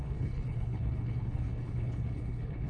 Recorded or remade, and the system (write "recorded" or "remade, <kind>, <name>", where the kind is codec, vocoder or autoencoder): remade, codec, HILCodec